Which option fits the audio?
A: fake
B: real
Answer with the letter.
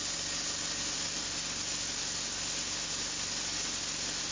B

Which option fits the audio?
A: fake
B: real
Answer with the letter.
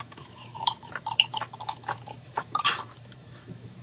A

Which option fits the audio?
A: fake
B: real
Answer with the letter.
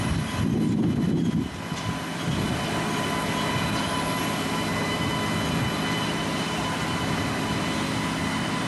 B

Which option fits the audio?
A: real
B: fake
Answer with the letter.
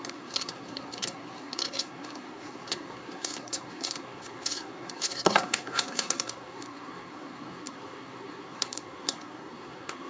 B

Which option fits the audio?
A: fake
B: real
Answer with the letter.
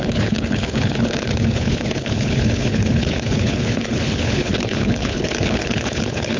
A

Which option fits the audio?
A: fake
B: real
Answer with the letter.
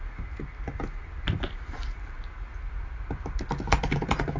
B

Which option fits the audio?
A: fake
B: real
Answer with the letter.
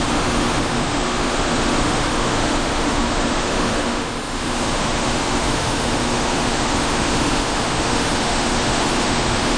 A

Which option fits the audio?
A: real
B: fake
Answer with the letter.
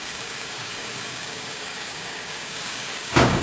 B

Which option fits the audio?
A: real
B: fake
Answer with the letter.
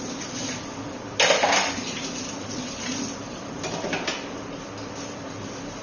B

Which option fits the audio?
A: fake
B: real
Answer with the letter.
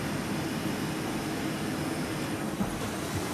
B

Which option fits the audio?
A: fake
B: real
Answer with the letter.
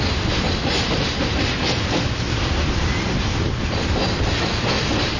B